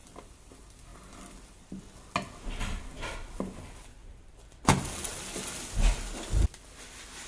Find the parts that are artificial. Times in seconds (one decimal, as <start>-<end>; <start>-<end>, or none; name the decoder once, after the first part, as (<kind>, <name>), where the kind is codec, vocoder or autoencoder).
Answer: 0.0-0.5 (vocoder, BigVGAN v2); 4.0-4.6